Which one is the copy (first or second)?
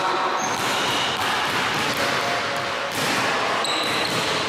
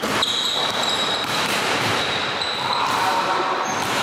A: second